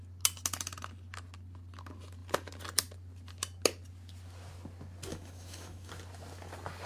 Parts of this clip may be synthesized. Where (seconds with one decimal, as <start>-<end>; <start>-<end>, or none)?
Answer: 5.1-5.9